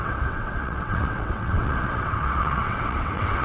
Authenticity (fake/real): fake